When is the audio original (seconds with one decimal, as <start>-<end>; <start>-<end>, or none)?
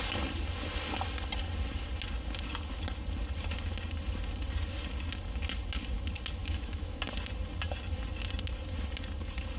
0.0-6.4; 7.0-9.6